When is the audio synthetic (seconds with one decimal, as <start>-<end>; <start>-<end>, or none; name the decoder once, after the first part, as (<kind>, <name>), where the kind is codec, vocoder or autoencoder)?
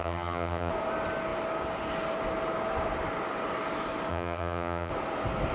0.0-0.7 (vocoder, HiFi-GAN); 4.1-4.9